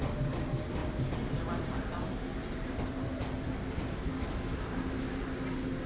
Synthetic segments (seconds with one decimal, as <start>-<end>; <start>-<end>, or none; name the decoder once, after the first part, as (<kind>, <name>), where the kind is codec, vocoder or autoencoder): none